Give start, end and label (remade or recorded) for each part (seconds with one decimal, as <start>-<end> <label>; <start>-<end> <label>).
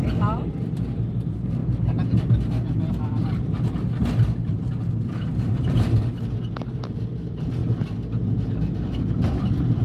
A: 0.0-5.3 recorded; 5.3-5.9 remade; 5.9-9.8 recorded